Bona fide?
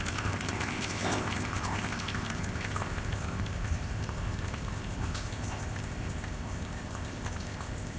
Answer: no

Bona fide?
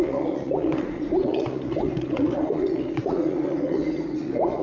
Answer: no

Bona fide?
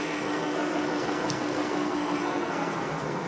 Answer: no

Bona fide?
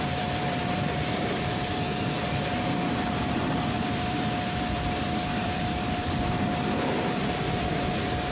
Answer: no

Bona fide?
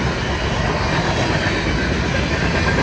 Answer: yes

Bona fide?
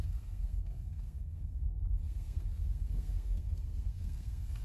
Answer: no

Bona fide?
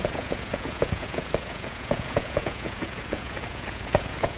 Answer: no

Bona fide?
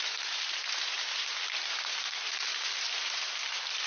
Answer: yes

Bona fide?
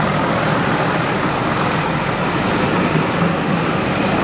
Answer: yes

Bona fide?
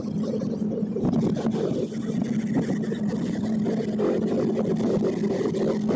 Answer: yes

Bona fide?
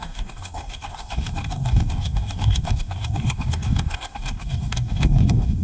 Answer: no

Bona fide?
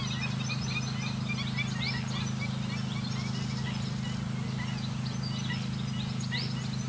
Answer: yes